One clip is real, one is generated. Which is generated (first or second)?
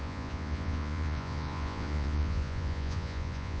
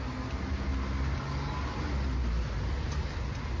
first